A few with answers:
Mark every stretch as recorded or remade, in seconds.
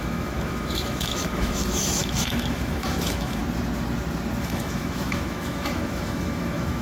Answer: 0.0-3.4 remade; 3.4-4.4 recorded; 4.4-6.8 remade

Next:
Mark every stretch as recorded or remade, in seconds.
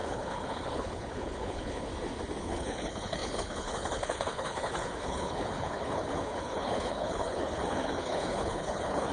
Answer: 0.0-1.9 remade; 1.9-2.4 recorded; 2.4-9.1 remade